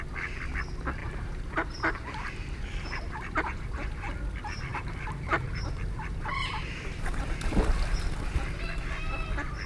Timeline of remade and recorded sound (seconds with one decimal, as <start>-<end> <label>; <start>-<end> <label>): 0.0-1.0 recorded; 1.0-4.1 remade; 4.1-4.7 recorded; 4.7-6.3 remade; 6.3-9.7 recorded